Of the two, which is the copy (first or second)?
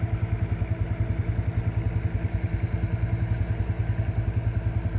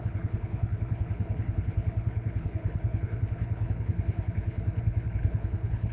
second